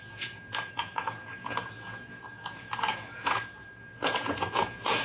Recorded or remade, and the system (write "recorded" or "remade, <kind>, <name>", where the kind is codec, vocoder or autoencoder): remade, vocoder, Vocos